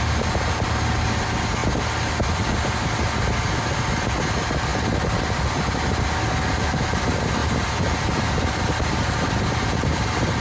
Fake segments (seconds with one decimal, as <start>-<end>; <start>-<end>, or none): none